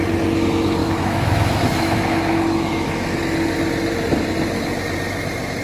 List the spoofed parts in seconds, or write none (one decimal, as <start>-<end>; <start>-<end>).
0.8-3.2

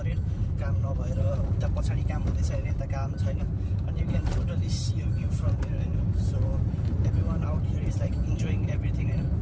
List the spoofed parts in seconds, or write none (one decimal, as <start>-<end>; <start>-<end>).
0.0-9.4

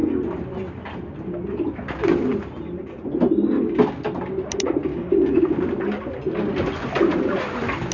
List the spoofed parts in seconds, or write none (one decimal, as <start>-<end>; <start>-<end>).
4.9-5.4